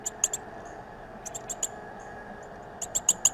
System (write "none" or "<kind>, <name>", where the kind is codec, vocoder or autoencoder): none